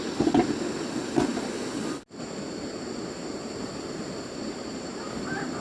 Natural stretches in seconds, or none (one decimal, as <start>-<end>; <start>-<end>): 0.0-5.6